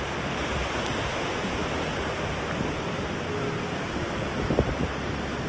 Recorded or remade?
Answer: recorded